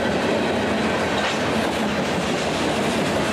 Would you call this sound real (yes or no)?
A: yes